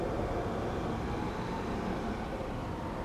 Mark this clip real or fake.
real